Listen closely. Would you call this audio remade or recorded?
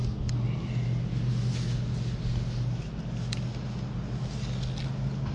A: recorded